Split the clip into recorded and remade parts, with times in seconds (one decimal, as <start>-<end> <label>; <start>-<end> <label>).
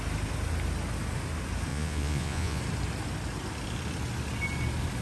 0.0-1.7 recorded; 1.7-2.6 remade; 2.6-5.0 recorded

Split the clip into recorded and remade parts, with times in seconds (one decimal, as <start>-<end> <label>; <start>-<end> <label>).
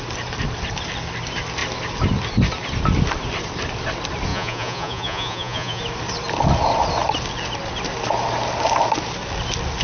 0.0-4.3 recorded; 4.3-5.8 remade; 5.8-9.8 recorded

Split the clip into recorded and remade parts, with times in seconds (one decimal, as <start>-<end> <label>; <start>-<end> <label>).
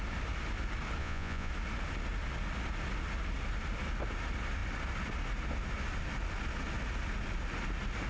0.0-1.0 recorded; 1.0-1.5 remade; 1.5-8.1 recorded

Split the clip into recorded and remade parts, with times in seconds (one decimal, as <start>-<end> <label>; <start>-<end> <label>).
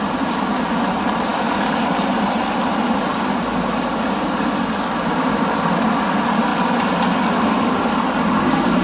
0.0-8.8 recorded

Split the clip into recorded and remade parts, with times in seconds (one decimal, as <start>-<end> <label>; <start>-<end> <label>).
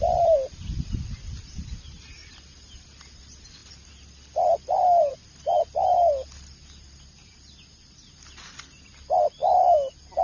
0.0-10.2 recorded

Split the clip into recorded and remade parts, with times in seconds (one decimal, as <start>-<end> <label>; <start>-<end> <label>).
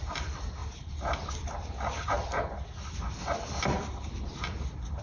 0.0-5.0 recorded